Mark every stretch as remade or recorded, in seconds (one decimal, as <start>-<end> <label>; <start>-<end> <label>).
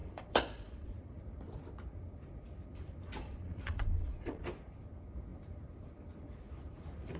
0.0-1.2 remade; 1.2-3.2 recorded; 3.2-4.4 remade; 4.4-7.2 recorded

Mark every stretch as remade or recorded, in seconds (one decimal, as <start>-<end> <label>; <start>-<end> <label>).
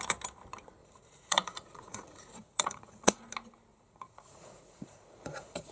0.0-0.8 recorded; 0.8-3.2 remade; 3.2-3.7 recorded; 3.7-5.7 remade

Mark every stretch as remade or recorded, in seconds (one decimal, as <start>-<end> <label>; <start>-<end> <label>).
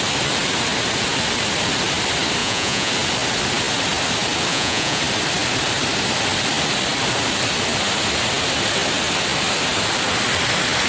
0.0-2.4 recorded; 2.4-2.9 remade; 2.9-4.5 recorded; 4.5-5.0 remade; 5.0-10.9 recorded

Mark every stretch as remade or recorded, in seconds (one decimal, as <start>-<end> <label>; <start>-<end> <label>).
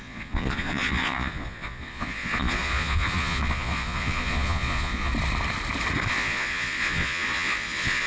0.0-5.1 remade; 5.1-6.1 recorded; 6.1-8.1 remade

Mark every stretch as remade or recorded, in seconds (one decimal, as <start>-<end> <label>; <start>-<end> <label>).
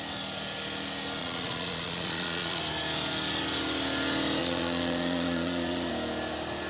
0.0-1.2 recorded; 1.2-2.6 remade; 2.6-4.4 recorded; 4.4-5.9 remade; 5.9-6.7 recorded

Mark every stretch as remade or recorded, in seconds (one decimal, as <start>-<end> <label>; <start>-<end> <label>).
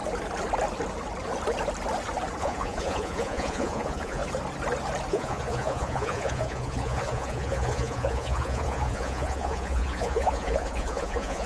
0.0-2.4 recorded; 2.4-4.2 remade; 4.2-5.1 recorded; 5.1-11.5 remade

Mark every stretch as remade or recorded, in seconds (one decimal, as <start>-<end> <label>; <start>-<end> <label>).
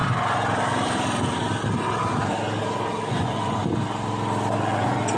0.0-3.1 recorded; 3.1-3.6 remade; 3.6-4.6 recorded; 4.6-5.2 remade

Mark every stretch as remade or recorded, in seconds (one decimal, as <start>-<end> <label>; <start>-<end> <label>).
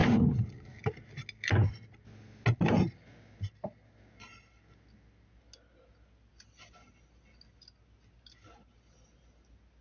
0.0-9.8 recorded